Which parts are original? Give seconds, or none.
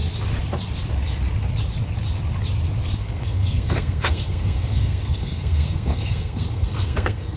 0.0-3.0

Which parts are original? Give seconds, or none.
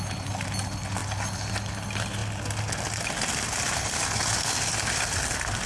0.0-5.7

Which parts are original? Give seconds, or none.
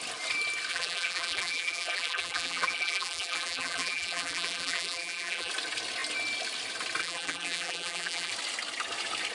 0.0-0.7; 5.5-7.0; 8.3-9.3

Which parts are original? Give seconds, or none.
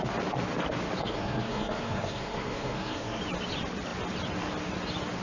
0.0-1.0; 3.2-5.2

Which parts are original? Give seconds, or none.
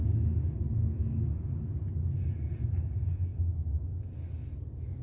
0.0-5.0